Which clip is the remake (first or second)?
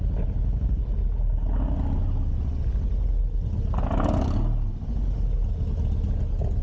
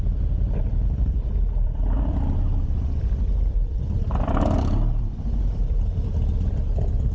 second